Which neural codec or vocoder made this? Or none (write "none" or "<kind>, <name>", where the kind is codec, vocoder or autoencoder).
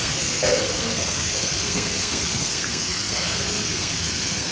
codec, SNAC